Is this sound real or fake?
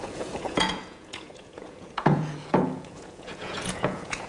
fake